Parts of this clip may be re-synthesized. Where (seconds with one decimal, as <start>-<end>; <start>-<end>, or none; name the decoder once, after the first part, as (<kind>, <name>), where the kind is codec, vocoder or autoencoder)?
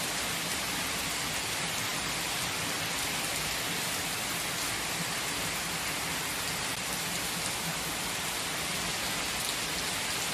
none